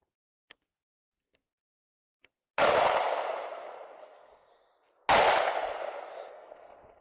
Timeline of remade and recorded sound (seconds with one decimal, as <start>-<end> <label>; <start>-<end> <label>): 0.0-0.7 remade; 0.7-4.0 recorded; 4.0-4.5 remade; 4.5-6.3 recorded; 6.3-7.0 remade